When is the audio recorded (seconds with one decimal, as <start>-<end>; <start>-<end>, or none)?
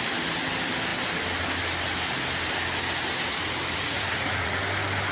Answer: 0.0-3.8; 4.6-5.1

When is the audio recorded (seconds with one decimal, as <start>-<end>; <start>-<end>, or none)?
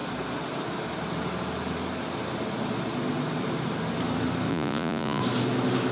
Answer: 0.0-4.5; 5.2-5.9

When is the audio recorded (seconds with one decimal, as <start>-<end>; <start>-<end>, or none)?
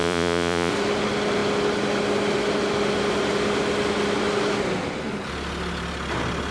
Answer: 0.7-6.5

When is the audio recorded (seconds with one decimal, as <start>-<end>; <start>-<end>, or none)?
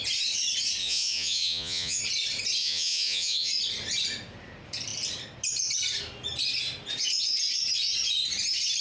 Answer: 0.0-0.8; 2.0-2.6; 3.5-8.8